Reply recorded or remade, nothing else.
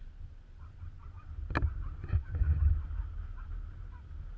recorded